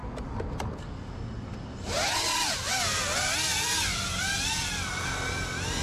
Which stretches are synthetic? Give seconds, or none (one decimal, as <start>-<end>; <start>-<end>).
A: 1.5-2.7; 3.5-4.7